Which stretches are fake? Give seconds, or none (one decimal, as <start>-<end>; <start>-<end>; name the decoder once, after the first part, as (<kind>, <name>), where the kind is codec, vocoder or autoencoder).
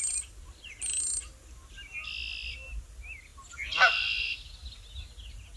none